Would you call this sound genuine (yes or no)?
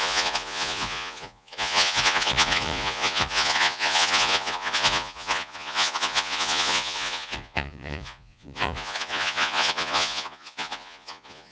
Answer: no